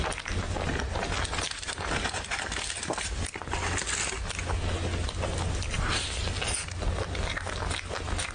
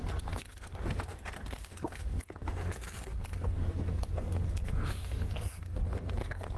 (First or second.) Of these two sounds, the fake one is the second